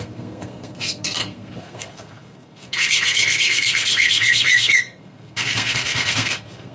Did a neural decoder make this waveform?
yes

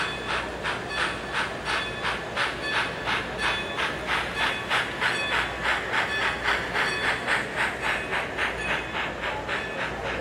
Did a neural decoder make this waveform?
no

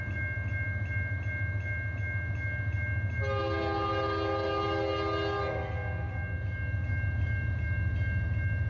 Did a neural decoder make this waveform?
no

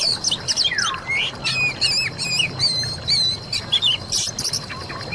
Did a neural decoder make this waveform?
no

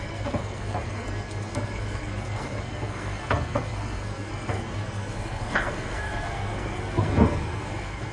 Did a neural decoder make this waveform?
yes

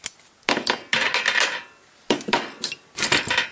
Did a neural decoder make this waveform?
no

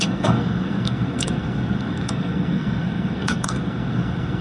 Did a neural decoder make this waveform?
yes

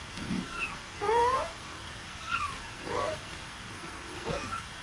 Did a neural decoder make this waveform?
yes